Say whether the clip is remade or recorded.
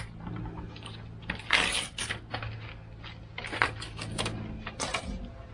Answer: recorded